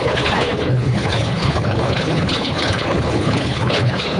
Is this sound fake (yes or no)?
yes